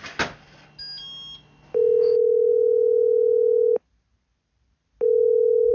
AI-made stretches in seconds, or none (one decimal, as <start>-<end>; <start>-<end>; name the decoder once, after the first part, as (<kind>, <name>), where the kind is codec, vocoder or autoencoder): none